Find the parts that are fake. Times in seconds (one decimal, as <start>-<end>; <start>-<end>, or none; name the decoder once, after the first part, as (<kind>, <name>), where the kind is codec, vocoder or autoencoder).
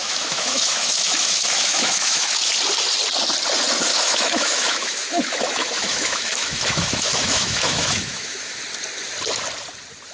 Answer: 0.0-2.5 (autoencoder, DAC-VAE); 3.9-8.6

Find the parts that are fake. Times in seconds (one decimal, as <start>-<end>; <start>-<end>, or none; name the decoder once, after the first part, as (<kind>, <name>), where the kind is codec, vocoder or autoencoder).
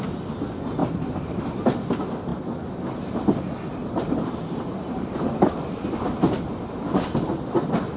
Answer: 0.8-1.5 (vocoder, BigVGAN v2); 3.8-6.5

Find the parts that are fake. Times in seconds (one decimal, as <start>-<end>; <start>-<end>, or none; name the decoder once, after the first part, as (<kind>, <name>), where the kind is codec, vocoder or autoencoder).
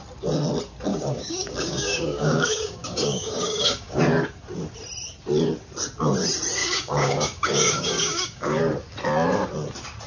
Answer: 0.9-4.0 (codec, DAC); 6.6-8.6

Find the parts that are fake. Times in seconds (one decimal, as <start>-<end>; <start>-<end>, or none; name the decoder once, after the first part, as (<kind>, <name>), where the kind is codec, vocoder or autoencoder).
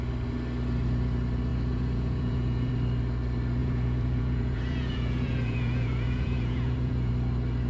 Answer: 1.5-2.7 (vocoder, Vocos); 3.6-7.1